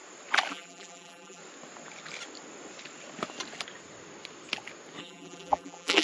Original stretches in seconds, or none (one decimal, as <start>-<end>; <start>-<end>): 0.0-0.5; 1.4-5.0